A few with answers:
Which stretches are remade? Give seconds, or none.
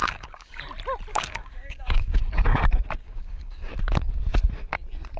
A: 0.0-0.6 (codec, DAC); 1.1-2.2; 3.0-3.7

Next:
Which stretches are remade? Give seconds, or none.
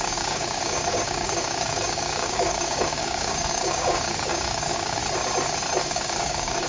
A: 0.0-5.0 (codec, DAC); 5.8-6.7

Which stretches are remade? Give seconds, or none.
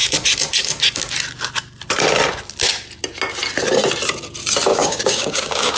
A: 4.7-5.8 (codec, DAC)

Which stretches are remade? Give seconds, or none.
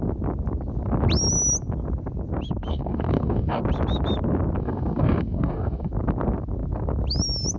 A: 2.7-3.6 (codec, DAC); 4.6-5.9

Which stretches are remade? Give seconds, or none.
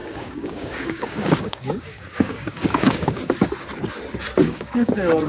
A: 0.0-3.2 (codec, DAC); 4.4-5.3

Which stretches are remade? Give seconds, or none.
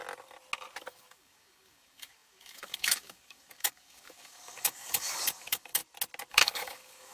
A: 0.9-5.8 (codec, DAC); 6.3-7.1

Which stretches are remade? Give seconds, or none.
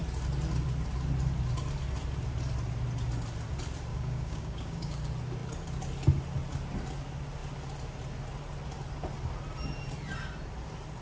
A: 3.9-5.0 (codec, DAC)